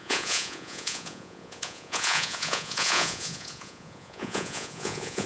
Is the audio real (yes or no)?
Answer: no